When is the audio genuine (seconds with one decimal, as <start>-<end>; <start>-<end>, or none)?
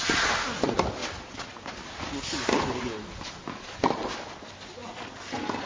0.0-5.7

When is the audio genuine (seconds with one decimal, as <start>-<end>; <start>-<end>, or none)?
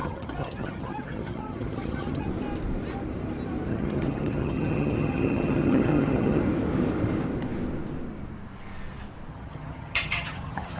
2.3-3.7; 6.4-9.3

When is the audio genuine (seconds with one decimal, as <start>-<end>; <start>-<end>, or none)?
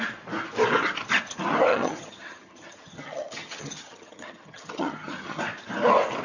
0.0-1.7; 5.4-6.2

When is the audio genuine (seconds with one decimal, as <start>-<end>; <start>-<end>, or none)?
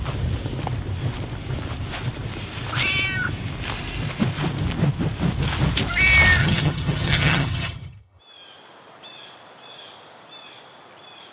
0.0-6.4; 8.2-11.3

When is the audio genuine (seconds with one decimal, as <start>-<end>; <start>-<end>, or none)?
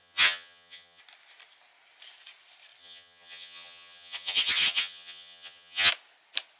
1.0-2.8; 5.9-6.6